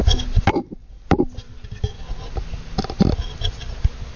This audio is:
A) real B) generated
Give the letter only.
A